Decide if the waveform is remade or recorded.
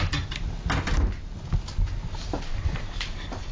recorded